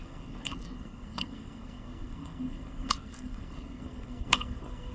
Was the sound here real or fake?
fake